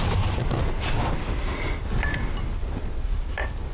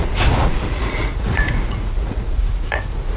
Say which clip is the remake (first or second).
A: second